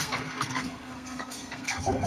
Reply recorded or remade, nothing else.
remade